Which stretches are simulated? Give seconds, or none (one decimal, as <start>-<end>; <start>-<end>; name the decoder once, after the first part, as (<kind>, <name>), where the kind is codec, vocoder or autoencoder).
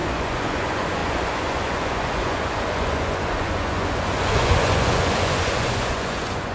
0.0-6.5 (vocoder, Vocos)